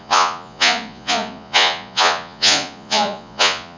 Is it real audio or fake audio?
fake